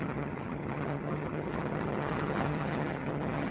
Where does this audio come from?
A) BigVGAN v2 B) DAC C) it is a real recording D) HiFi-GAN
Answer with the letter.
D